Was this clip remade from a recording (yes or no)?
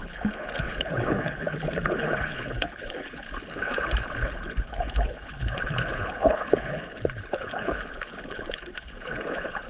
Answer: yes